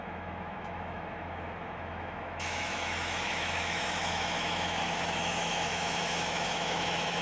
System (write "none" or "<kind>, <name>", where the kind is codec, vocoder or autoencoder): autoencoder, DAC-VAE